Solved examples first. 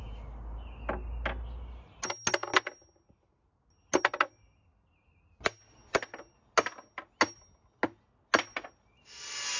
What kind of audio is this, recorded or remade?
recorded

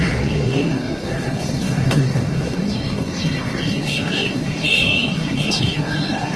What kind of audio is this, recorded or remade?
remade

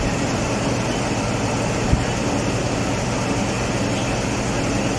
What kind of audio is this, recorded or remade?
recorded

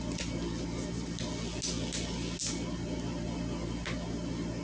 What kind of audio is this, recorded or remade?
recorded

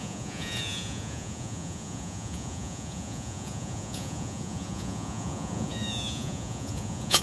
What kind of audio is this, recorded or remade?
remade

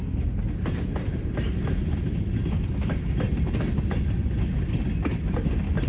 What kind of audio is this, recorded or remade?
recorded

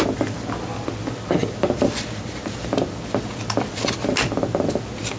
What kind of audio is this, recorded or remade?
recorded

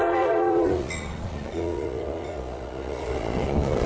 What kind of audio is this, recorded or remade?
remade